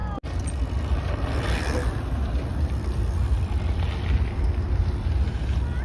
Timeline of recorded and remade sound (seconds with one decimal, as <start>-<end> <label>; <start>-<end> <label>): 0.0-5.8 recorded